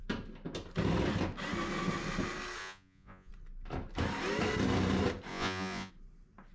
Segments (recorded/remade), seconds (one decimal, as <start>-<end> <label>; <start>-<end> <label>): 0.0-2.6 recorded; 2.6-3.3 remade; 3.3-5.3 recorded; 5.3-5.9 remade; 5.9-6.5 recorded

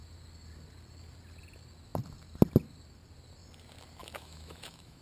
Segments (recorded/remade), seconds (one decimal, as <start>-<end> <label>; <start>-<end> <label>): 0.0-4.0 recorded; 4.0-5.0 remade

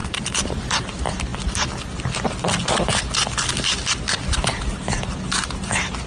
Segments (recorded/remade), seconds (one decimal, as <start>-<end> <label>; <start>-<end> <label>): 0.0-0.9 remade; 0.9-6.1 recorded

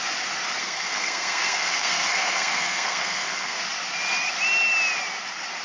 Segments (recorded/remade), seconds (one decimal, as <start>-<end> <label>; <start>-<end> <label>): 0.0-0.6 recorded; 0.6-3.6 remade; 3.6-5.6 recorded

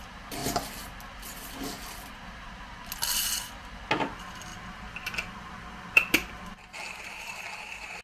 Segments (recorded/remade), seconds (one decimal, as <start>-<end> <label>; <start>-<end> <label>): 0.0-8.0 recorded

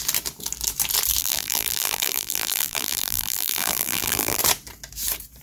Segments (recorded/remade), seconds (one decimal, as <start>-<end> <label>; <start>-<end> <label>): 0.0-1.2 recorded; 1.2-4.4 remade; 4.4-5.4 recorded

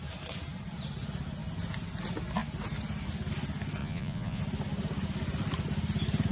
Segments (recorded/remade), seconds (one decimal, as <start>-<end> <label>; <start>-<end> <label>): 0.0-3.8 recorded; 3.8-4.4 remade; 4.4-6.3 recorded

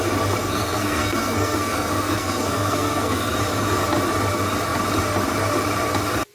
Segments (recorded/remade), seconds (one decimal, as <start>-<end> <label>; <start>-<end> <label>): 0.0-0.4 recorded; 0.4-3.3 remade; 3.3-6.3 recorded